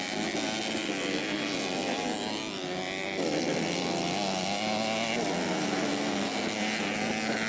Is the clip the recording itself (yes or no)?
yes